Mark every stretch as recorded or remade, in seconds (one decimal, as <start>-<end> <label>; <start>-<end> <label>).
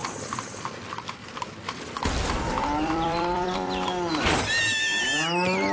0.0-2.0 recorded; 2.0-4.4 remade; 4.4-5.7 recorded